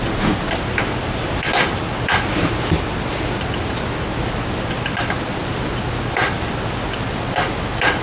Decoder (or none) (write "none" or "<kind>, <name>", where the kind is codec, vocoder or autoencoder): none